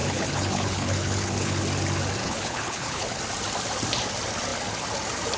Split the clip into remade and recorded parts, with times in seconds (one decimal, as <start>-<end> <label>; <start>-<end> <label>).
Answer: 0.0-1.6 remade; 1.6-2.2 recorded; 2.2-3.2 remade; 3.2-5.4 recorded

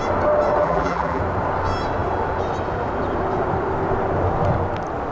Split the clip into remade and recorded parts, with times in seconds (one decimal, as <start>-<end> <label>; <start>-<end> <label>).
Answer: 0.0-0.6 recorded; 0.6-1.2 remade; 1.2-5.1 recorded